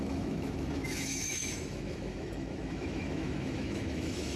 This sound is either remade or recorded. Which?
remade